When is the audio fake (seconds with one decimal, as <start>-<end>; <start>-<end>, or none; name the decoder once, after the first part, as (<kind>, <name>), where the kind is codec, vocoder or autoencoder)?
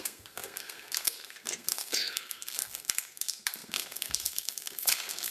0.0-5.3 (codec, SNAC)